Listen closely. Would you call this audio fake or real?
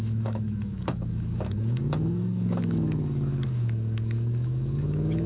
fake